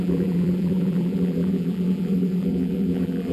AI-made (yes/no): yes